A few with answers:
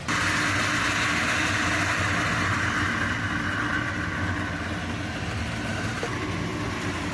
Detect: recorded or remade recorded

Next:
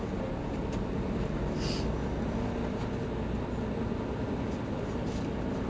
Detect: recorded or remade recorded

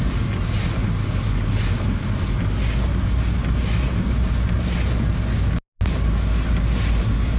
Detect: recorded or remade recorded